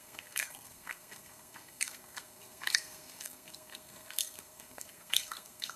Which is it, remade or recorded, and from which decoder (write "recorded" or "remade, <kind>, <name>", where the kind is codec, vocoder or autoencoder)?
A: remade, codec, SNAC